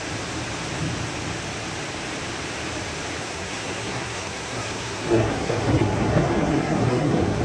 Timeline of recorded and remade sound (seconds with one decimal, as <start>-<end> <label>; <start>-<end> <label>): 0.0-3.2 recorded; 3.2-7.4 remade